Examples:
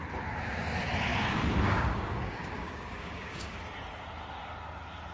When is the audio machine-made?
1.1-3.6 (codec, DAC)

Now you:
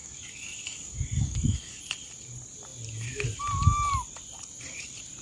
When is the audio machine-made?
0.0-1.8 (codec, DAC)

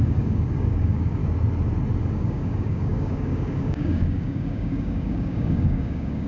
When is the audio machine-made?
0.0-1.2 (codec, DAC); 2.0-6.3

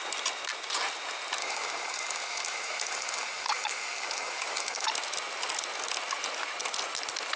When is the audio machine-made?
1.4-4.9 (codec, DAC)

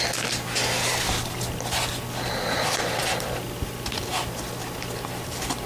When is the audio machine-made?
none